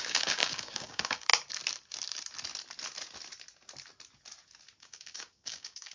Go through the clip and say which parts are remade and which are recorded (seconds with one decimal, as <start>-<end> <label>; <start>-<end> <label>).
0.0-1.3 remade; 1.3-4.8 recorded; 4.8-5.9 remade